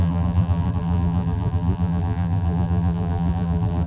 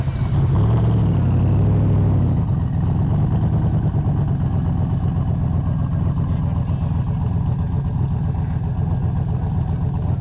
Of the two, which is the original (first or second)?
second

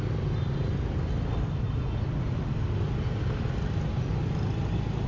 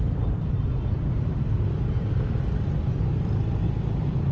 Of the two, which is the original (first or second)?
first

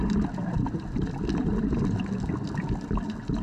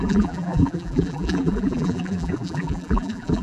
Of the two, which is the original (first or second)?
first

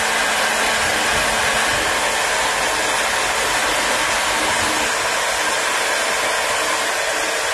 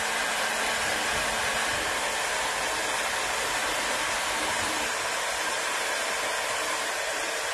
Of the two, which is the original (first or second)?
first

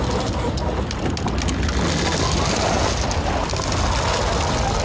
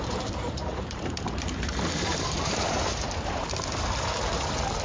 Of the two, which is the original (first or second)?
first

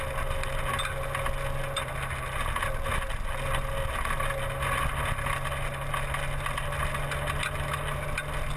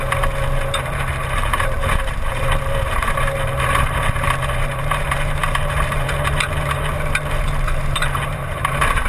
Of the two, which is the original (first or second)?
first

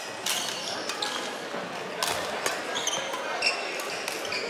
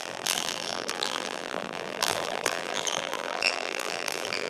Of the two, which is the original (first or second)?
first